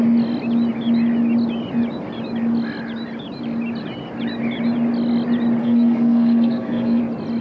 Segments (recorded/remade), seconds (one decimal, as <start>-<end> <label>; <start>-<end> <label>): 0.0-5.6 recorded; 5.6-7.0 remade; 7.0-7.4 recorded